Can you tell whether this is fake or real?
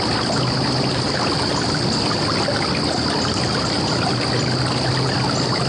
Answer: real